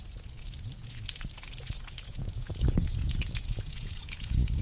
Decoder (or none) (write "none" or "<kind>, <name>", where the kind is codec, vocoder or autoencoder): vocoder, Vocos